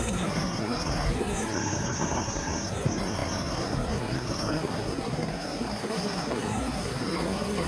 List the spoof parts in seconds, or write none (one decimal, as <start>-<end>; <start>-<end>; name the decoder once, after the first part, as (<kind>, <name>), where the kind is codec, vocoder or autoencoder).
0.0-7.7 (codec, SNAC)